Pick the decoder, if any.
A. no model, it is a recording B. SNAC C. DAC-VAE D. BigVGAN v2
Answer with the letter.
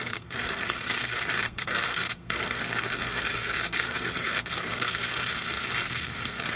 B